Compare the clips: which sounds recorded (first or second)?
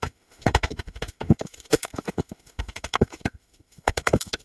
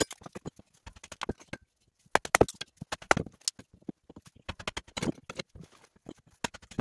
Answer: second